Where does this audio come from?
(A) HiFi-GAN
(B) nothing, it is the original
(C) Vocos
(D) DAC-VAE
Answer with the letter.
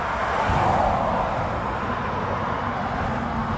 B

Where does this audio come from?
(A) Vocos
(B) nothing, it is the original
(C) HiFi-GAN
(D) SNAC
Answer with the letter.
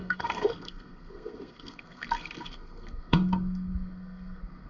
D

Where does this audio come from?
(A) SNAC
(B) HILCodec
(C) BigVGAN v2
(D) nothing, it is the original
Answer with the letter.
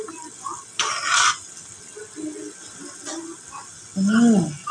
D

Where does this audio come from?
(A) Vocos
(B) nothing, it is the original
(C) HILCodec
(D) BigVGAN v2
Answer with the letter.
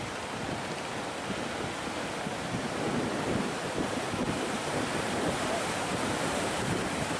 B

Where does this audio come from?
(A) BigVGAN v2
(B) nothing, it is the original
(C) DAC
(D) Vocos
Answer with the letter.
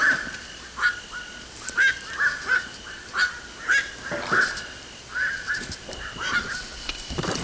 B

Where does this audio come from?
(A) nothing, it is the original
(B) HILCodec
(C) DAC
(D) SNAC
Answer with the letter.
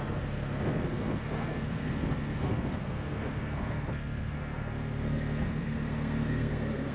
D